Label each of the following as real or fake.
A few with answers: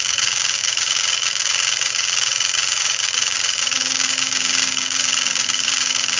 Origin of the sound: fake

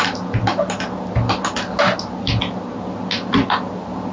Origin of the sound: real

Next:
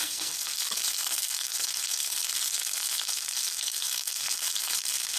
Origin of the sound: fake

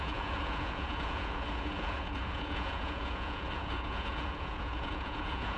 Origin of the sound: fake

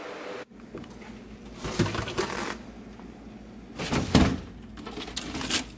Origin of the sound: real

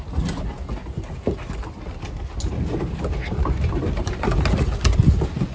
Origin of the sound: real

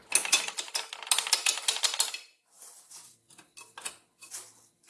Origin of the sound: real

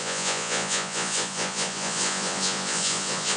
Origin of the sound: fake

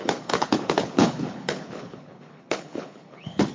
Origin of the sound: fake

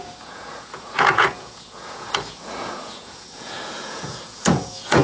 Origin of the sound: fake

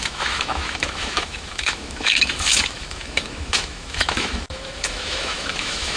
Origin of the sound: fake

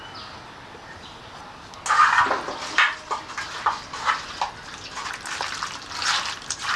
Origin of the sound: real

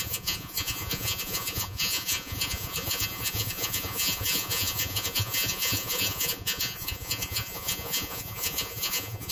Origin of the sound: fake